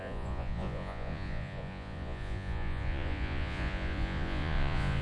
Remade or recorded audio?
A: remade